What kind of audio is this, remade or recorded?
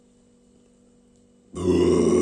recorded